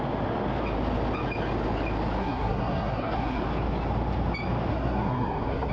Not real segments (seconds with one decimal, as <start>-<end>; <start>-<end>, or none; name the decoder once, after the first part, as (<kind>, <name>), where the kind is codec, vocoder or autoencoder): 2.2-3.4 (codec, SNAC); 4.7-5.7

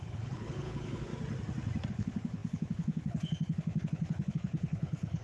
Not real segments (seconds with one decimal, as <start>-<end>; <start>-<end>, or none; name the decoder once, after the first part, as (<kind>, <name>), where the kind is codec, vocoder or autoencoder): 0.0-1.1 (codec, HILCodec); 1.9-5.2

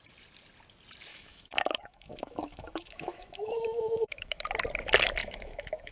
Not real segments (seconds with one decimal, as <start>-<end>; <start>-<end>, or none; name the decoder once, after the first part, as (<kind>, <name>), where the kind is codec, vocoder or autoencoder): 1.1-4.4 (autoencoder, DAC-VAE); 5.2-5.9

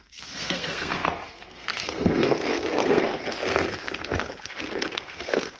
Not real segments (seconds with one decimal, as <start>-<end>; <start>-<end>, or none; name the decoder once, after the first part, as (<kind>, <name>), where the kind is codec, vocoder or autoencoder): 0.0-5.6 (codec, SNAC)